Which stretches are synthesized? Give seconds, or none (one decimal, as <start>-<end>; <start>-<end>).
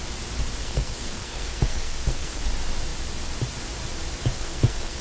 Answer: 0.6-2.4; 4.3-5.0